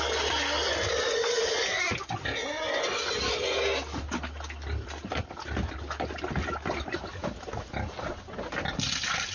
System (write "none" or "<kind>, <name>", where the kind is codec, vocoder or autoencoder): none